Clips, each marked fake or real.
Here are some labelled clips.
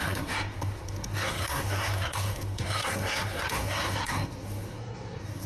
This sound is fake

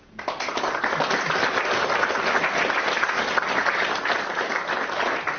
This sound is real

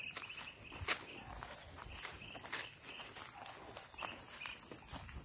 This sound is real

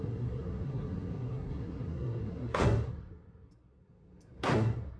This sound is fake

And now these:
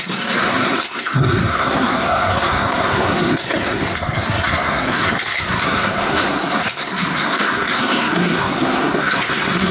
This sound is fake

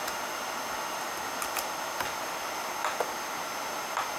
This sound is real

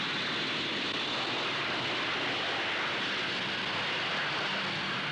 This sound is real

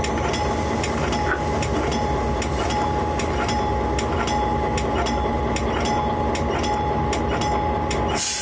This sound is real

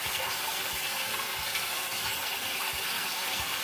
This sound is fake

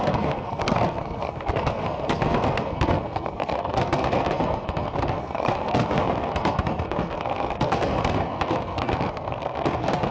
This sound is fake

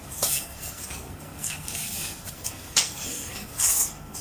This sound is fake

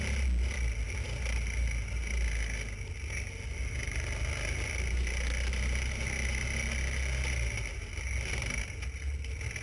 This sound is real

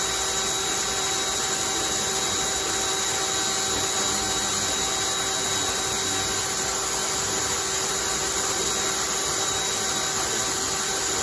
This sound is real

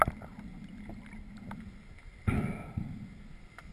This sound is real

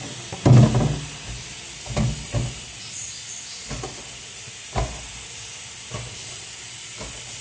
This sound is real